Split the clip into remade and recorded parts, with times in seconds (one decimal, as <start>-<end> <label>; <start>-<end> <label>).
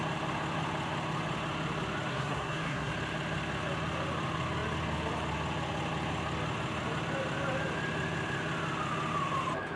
0.0-2.1 recorded; 2.1-2.9 remade; 2.9-9.8 recorded